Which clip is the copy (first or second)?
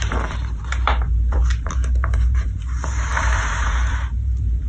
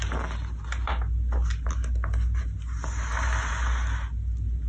first